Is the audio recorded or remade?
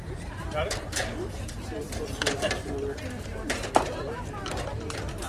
remade